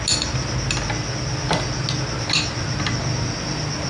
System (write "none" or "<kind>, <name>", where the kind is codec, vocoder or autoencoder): none